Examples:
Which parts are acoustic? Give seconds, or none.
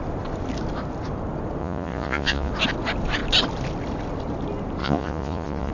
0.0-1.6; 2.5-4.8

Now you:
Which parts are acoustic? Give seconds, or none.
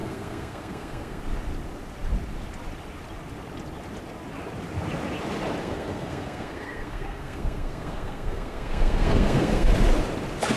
1.2-5.6; 9.7-10.6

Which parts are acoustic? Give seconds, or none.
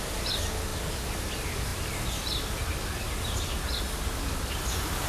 0.0-5.1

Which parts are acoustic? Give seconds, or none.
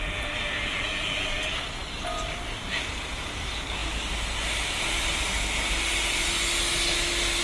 0.0-7.4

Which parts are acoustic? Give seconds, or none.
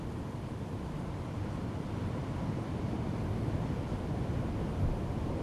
0.0-5.4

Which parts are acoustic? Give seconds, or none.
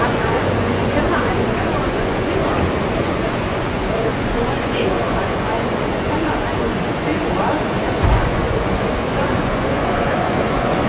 2.4-3.0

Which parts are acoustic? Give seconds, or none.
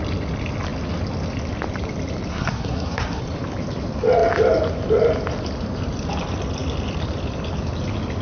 0.0-2.3; 3.2-8.2